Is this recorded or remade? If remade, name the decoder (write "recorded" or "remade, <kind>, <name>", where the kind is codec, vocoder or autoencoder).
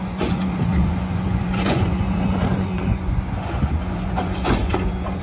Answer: remade, vocoder, Vocos